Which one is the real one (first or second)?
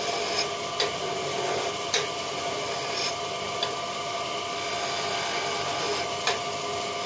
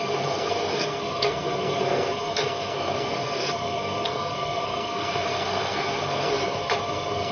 first